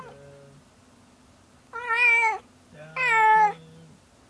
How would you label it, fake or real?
real